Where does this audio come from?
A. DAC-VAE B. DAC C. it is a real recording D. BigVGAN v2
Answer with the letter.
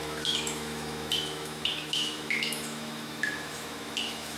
A